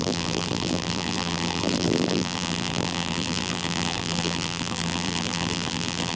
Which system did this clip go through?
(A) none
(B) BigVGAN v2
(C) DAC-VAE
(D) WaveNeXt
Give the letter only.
B